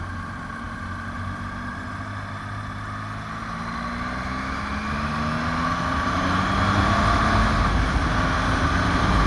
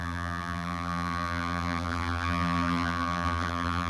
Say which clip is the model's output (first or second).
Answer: second